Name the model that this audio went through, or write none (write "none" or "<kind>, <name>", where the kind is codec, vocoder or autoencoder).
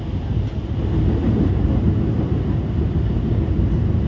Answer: none